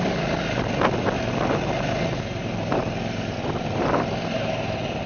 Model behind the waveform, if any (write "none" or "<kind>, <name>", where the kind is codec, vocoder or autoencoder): none